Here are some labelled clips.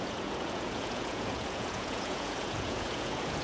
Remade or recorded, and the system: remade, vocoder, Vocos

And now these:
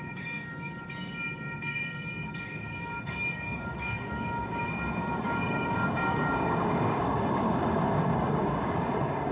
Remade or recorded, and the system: remade, codec, DAC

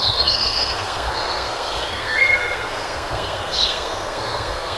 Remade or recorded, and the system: remade, codec, SNAC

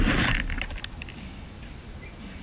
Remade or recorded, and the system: recorded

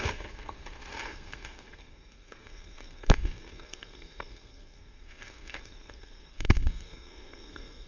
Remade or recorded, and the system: remade, codec, SNAC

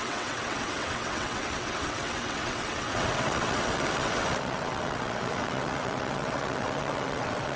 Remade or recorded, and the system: remade, vocoder, WaveNeXt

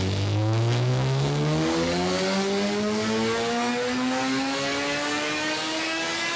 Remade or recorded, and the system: remade, codec, DAC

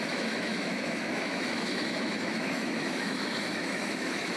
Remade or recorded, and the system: remade, autoencoder, DAC-VAE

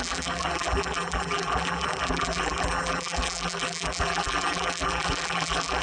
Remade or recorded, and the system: remade, vocoder, BigVGAN v2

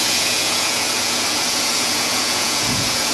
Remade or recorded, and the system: remade, vocoder, Vocos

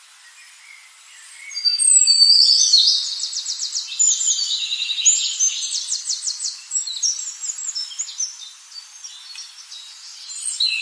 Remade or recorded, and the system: recorded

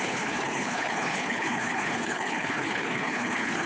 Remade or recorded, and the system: remade, codec, HILCodec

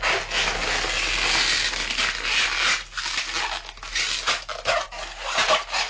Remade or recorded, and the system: recorded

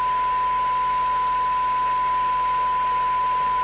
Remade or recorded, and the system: recorded